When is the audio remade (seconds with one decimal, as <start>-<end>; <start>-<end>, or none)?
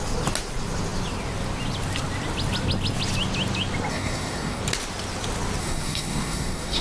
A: 3.9-4.6; 5.6-6.8